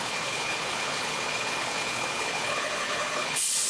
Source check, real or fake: fake